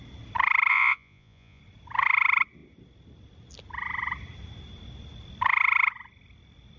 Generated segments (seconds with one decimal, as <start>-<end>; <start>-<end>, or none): 0.7-1.6